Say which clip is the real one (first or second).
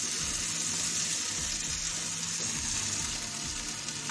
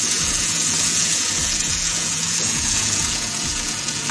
first